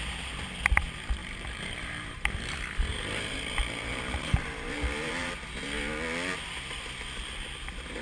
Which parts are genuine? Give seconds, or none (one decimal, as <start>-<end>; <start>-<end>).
0.0-1.2; 2.2-2.9; 5.3-8.0